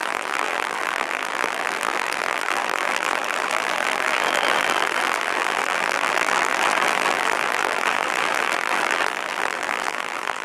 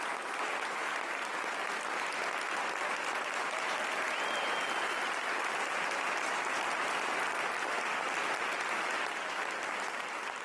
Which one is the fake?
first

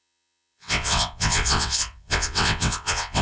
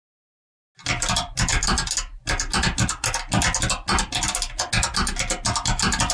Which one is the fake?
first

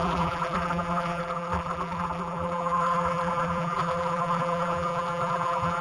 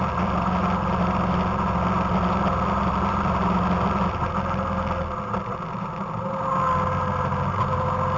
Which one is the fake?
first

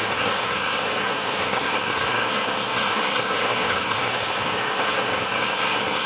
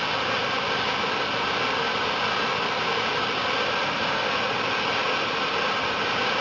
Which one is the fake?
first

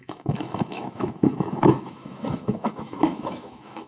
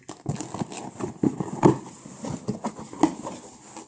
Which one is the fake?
first